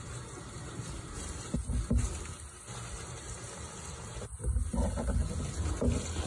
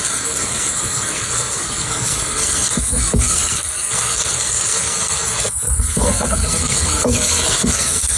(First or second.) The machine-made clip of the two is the second